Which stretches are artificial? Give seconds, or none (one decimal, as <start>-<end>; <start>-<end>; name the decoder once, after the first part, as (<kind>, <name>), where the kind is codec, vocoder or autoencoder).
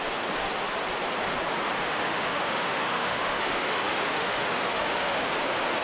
1.8-5.3 (autoencoder, DAC-VAE)